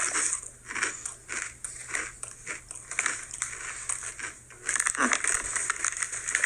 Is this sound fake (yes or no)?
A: no